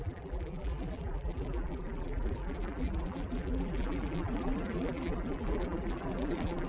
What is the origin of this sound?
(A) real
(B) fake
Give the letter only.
B